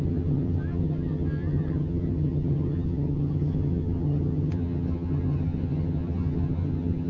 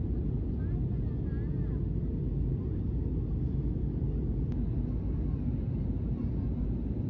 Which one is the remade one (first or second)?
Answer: first